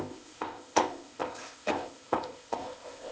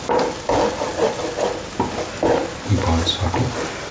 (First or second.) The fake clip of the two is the first